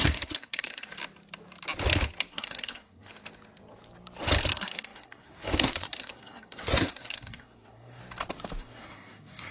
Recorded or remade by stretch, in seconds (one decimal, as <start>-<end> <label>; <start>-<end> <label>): 0.0-0.9 remade; 0.9-2.3 recorded; 2.3-3.1 remade; 3.1-4.5 recorded; 4.5-8.0 remade; 8.0-8.6 recorded; 8.6-9.5 remade